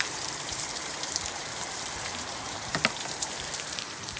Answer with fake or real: fake